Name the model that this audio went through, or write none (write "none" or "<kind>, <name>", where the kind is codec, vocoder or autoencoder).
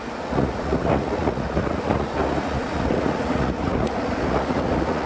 vocoder, Vocos